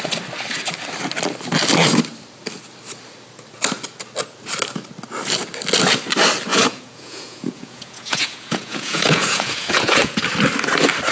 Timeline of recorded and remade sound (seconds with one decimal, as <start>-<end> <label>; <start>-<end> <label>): 0.0-6.5 recorded; 6.5-10.2 remade; 10.2-11.1 recorded

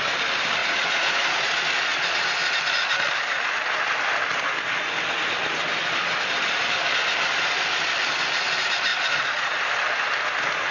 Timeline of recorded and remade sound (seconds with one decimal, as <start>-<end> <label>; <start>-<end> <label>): 0.0-0.6 recorded; 0.6-1.5 remade; 1.5-8.9 recorded; 8.9-9.6 remade; 9.6-10.7 recorded

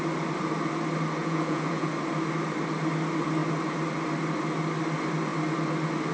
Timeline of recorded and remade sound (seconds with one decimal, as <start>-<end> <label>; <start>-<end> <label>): 0.0-1.2 recorded; 1.2-1.9 remade; 1.9-6.1 recorded

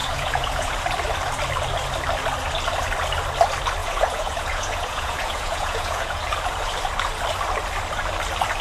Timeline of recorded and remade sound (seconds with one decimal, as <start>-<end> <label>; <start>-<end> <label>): 0.0-0.7 remade; 0.7-3.8 recorded; 3.8-6.2 remade; 6.2-8.6 recorded

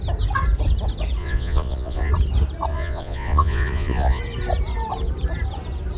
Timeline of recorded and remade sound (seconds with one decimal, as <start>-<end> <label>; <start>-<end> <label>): 0.0-1.2 recorded; 1.2-2.1 remade; 2.1-2.7 recorded; 2.7-4.2 remade; 4.2-6.0 recorded

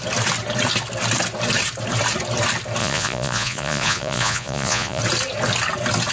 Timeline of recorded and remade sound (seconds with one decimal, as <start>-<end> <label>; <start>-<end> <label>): 0.0-2.8 recorded; 2.8-5.0 remade; 5.0-6.1 recorded

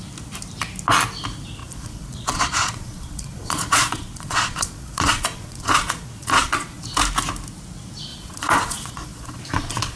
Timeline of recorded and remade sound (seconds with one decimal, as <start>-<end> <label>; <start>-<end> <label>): 0.0-1.6 recorded; 1.6-6.8 remade; 6.8-8.1 recorded; 8.1-10.0 remade